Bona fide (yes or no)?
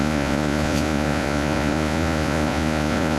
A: no